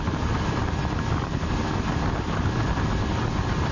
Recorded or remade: recorded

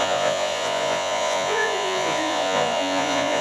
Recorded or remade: remade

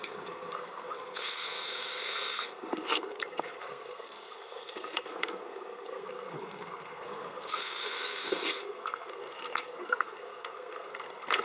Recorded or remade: remade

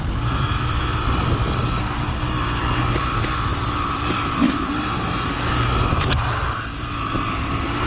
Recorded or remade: recorded